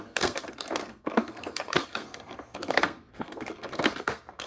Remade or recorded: remade